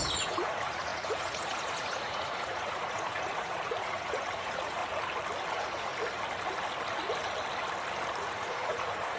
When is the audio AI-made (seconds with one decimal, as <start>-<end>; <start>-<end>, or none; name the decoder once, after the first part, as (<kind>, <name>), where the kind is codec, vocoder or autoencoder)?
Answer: 0.0-4.8 (vocoder, Vocos); 5.5-5.9; 8.2-9.2